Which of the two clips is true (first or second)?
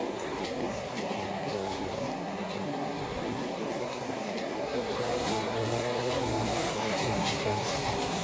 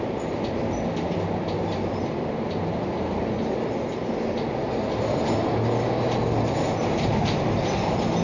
second